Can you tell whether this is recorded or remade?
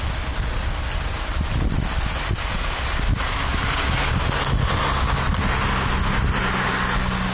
recorded